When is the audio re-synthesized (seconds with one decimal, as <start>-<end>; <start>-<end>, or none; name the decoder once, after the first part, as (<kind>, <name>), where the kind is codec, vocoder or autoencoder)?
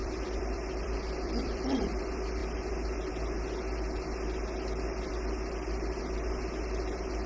0.0-2.0 (vocoder, BigVGAN v2)